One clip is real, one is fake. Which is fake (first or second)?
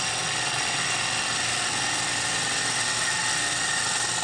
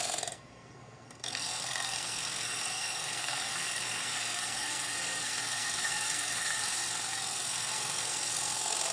second